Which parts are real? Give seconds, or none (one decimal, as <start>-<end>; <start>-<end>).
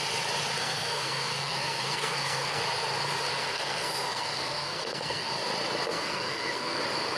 0.0-0.6; 2.6-3.3; 5.3-5.9; 6.8-7.2